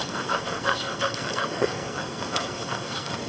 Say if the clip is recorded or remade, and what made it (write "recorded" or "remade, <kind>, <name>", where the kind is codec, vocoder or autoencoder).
remade, codec, SNAC